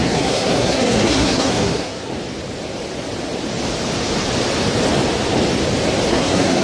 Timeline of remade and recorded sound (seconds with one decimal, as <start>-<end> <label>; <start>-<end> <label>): 0.0-2.1 remade; 2.1-6.1 recorded; 6.1-6.6 remade

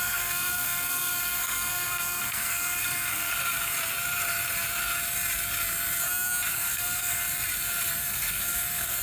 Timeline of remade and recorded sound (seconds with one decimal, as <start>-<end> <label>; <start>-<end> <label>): 0.0-3.3 remade; 3.3-6.5 recorded; 6.5-7.2 remade; 7.2-8.0 recorded; 8.0-9.0 remade

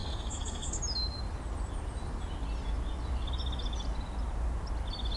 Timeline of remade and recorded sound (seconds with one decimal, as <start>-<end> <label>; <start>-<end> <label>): 0.0-0.8 remade; 0.8-5.2 recorded